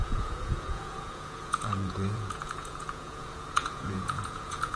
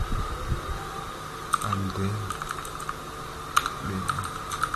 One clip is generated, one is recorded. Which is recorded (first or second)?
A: second